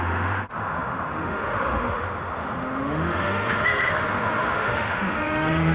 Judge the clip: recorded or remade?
remade